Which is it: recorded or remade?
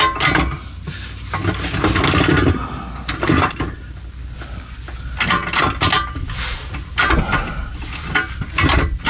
recorded